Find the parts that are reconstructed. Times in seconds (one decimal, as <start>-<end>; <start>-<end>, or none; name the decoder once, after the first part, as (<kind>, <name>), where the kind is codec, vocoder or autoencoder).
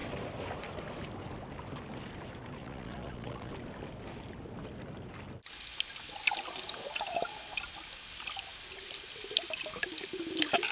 2.6-3.5 (vocoder, Vocos)